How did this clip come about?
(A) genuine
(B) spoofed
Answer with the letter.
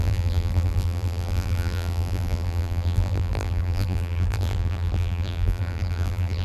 B